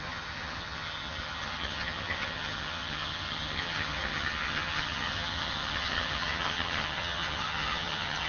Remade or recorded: remade